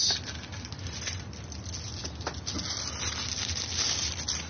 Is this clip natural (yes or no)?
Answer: yes